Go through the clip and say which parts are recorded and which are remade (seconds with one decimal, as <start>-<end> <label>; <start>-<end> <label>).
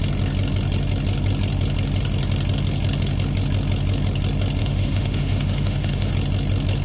0.0-4.6 recorded; 4.6-6.1 remade; 6.1-6.8 recorded